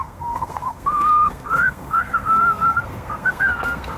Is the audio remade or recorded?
remade